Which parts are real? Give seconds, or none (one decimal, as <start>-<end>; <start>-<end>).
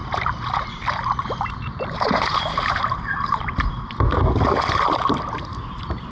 3.7-6.1